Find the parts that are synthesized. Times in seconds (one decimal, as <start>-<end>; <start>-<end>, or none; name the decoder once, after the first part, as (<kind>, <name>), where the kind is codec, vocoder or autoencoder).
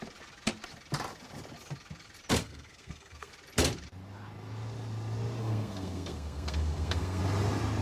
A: 2.4-3.3 (codec, SNAC); 5.4-7.2